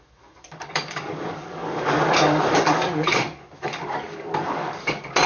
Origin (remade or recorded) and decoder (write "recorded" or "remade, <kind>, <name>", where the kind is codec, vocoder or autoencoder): remade, codec, DAC